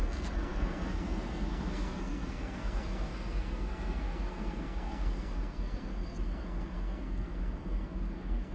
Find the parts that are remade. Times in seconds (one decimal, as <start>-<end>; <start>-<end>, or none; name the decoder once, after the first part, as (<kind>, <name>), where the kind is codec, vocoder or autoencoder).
0.0-8.5 (codec, SNAC)